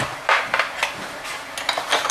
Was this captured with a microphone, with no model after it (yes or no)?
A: yes